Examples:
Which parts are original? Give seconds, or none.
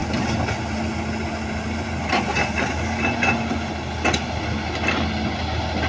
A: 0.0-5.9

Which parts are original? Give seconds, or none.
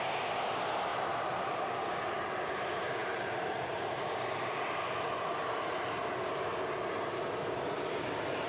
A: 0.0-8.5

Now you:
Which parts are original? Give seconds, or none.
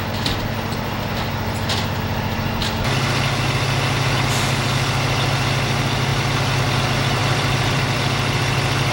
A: 0.0-7.2